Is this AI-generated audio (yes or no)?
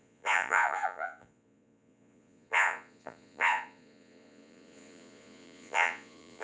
yes